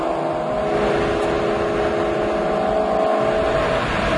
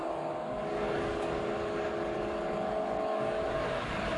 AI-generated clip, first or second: second